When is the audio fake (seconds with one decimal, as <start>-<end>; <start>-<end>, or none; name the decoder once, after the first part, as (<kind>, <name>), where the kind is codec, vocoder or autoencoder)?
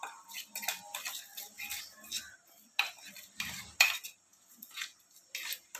4.3-5.0 (vocoder, Vocos)